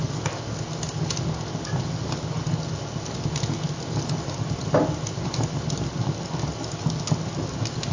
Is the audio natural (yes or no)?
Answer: yes